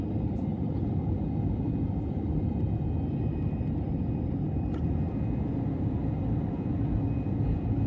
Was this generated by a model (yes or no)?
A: yes